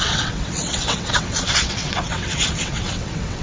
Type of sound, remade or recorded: remade